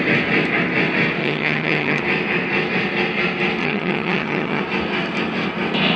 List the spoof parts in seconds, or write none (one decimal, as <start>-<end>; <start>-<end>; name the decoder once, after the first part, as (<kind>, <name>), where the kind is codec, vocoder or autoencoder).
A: 1.2-2.0 (vocoder, HiFi-GAN); 3.6-4.6